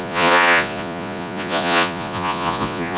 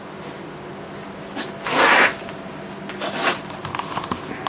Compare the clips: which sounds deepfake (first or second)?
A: first